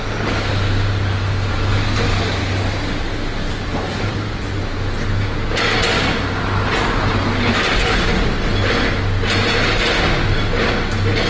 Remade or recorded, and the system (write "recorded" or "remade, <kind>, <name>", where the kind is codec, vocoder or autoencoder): recorded